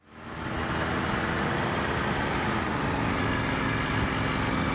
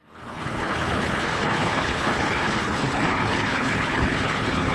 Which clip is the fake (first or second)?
second